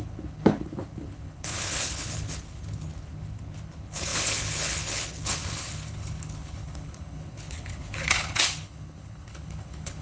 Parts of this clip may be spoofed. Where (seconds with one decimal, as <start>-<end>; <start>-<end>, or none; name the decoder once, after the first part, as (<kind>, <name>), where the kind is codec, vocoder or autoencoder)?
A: 0.0-10.0 (codec, HILCodec)